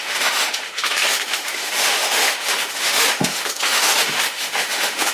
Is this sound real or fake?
fake